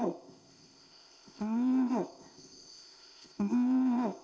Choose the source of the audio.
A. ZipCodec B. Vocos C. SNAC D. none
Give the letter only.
A